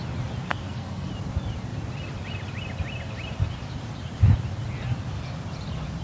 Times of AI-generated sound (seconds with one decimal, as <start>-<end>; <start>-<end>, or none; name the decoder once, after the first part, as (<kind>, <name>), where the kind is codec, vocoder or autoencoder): 0.5-1.1 (codec, SNAC)